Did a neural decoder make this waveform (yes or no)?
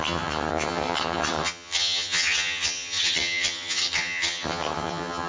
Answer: yes